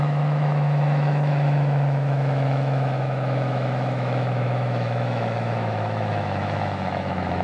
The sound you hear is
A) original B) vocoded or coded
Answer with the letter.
B